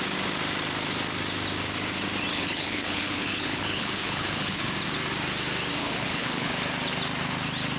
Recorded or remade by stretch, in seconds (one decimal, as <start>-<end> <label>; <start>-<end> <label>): 0.0-2.3 recorded; 2.3-4.7 remade; 4.7-5.8 recorded; 5.8-6.5 remade; 6.5-7.8 recorded